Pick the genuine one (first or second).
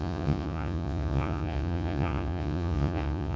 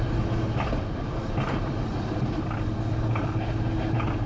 second